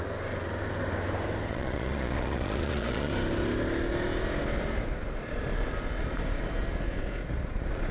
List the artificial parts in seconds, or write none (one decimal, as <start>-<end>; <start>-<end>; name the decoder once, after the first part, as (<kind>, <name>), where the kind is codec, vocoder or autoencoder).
1.5-3.1 (vocoder, Vocos)